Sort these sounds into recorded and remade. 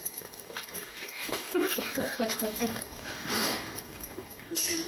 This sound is remade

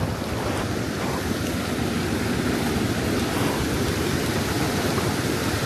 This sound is remade